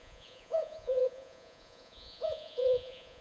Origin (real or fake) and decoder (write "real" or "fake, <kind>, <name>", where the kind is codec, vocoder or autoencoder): fake, vocoder, Vocos